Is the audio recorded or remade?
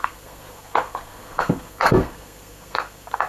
remade